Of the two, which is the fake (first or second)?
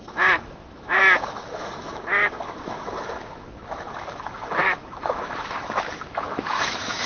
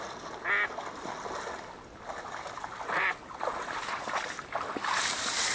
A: first